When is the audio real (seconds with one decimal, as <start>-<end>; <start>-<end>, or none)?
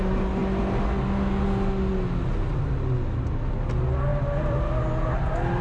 0.0-5.6